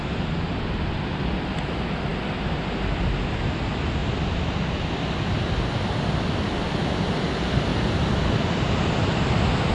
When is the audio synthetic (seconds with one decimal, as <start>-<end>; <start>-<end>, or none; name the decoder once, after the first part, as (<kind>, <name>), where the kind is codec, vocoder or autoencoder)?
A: none